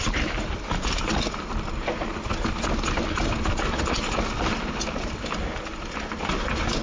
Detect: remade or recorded recorded